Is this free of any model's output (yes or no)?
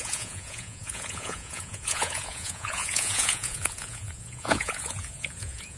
no